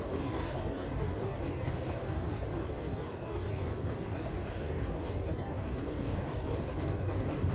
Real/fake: fake